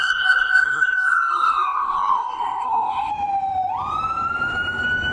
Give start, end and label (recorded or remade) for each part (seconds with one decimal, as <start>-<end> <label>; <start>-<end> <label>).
0.0-3.1 remade; 3.1-5.1 recorded

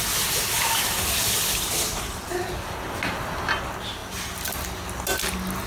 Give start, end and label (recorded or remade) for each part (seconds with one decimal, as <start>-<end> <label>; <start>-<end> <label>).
0.0-5.7 recorded

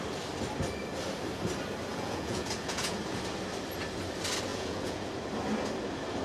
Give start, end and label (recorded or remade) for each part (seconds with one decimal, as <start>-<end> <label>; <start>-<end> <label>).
0.0-1.9 recorded; 1.9-3.0 remade; 3.0-4.5 recorded; 4.5-5.1 remade; 5.1-6.2 recorded

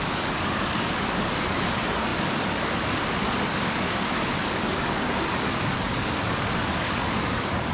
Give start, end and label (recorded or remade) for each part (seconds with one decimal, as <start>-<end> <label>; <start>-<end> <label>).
0.0-7.7 remade

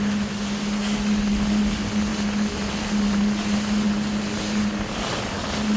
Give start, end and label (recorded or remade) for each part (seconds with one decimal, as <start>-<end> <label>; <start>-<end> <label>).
0.0-5.8 recorded

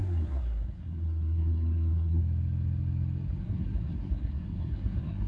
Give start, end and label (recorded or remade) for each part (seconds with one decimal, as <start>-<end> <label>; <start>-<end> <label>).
0.0-2.2 remade; 2.2-3.4 recorded; 3.4-5.3 remade